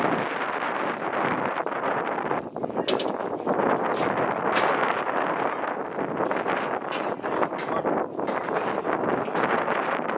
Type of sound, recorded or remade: recorded